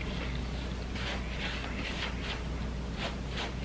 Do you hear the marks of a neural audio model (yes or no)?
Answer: no